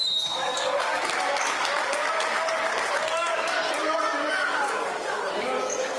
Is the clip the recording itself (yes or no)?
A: no